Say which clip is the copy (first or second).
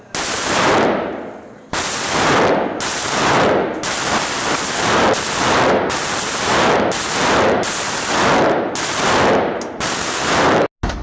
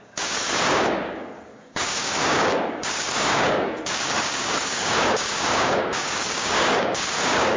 second